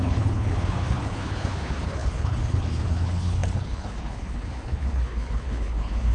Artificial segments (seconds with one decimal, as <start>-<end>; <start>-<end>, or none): 0.0-6.1